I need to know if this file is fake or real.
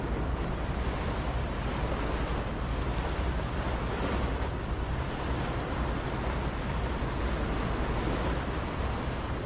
real